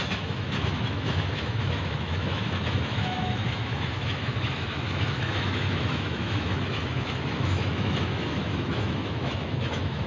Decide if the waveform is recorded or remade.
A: remade